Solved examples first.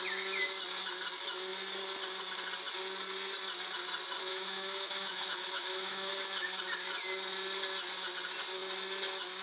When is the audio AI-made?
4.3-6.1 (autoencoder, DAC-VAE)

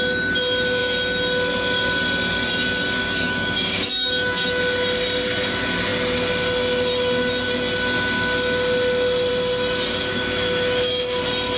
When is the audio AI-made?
3.0-4.6 (autoencoder, DAC-VAE); 10.1-11.2

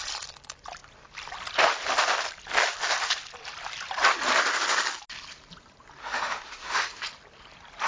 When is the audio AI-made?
6.0-7.0 (autoencoder, DAC-VAE)

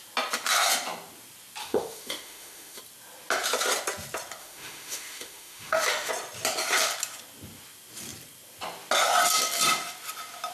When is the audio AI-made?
1.6-2.8 (autoencoder, DAC-VAE); 4.4-6.1

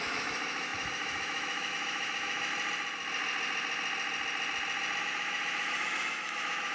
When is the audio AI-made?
0.0-2.5 (autoencoder, DAC-VAE); 5.0-6.7

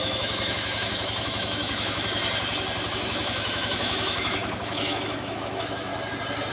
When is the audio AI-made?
0.0-2.2 (autoencoder, DAC-VAE); 2.9-5.9

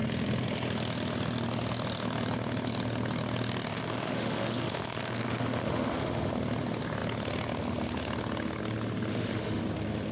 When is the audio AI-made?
3.7-6.3 (autoencoder, DAC-VAE); 9.1-9.6